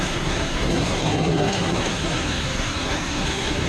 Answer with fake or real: fake